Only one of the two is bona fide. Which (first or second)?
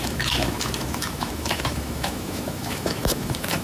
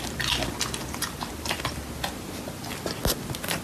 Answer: second